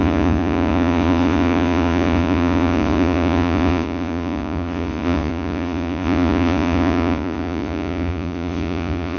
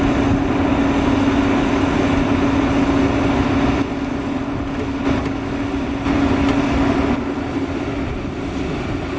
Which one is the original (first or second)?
second